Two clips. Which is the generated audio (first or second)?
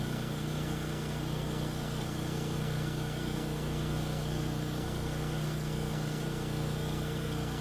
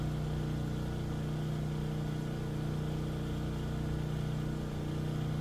first